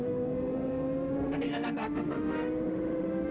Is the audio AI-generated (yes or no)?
yes